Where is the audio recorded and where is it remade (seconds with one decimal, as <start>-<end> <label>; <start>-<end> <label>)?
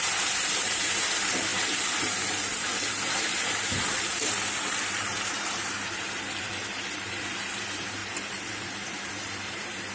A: 0.0-9.9 remade